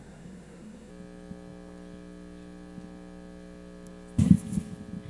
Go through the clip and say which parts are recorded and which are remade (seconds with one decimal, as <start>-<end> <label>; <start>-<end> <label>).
0.0-0.9 remade; 0.9-5.1 recorded

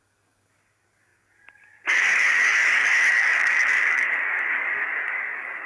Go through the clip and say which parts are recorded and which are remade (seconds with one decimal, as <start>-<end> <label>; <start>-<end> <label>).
0.0-5.7 remade

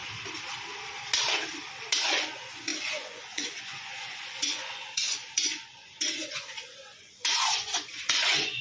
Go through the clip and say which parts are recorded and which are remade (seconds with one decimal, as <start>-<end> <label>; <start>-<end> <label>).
0.0-2.0 recorded; 2.0-8.6 remade